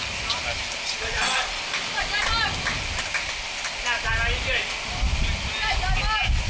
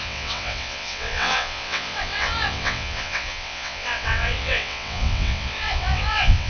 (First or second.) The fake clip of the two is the second